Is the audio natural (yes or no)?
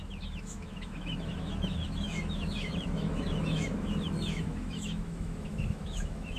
no